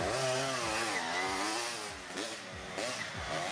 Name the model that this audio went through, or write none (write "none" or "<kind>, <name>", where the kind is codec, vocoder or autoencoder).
none